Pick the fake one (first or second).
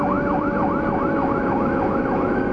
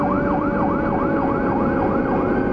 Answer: first